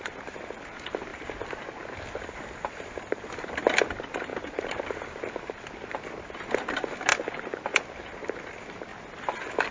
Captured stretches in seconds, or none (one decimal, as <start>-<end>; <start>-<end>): 0.0-4.3; 5.2-9.7